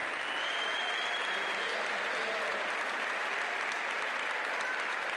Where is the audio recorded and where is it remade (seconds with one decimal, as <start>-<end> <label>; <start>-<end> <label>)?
0.0-3.2 remade; 3.2-4.1 recorded; 4.1-5.2 remade